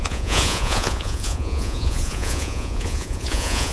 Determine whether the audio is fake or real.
fake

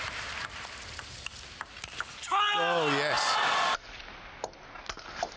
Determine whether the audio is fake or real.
real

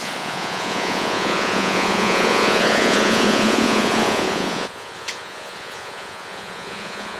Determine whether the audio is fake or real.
fake